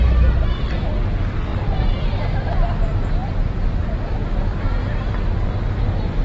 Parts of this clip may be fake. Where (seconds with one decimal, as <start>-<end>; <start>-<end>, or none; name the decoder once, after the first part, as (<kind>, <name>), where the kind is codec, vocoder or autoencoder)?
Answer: 1.5-2.5 (vocoder, BigVGAN v2)